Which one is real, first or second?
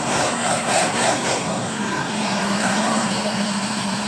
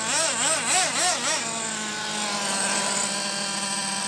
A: second